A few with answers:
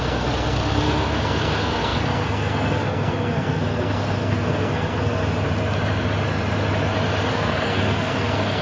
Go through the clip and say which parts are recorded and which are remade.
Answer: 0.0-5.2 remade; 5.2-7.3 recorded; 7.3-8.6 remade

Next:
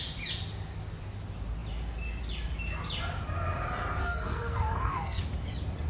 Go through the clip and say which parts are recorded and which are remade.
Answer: 0.0-4.0 recorded; 4.0-5.2 remade; 5.2-5.9 recorded

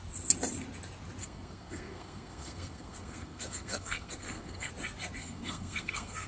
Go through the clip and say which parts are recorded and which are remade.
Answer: 0.0-1.2 recorded; 1.2-4.7 remade; 4.7-5.2 recorded; 5.2-6.3 remade

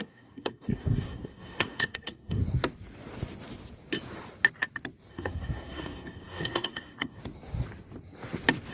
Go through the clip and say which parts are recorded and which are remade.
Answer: 0.0-2.4 remade; 2.4-5.1 recorded; 5.1-7.2 remade; 7.2-8.7 recorded